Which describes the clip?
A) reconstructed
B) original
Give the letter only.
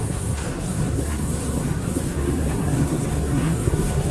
A